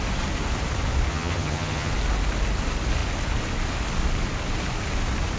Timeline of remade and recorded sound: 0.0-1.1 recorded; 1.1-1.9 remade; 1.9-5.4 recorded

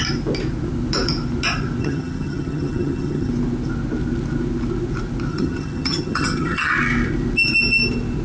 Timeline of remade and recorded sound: 0.0-1.8 recorded; 1.8-3.3 remade; 3.3-5.3 recorded; 5.3-6.7 remade; 6.7-8.2 recorded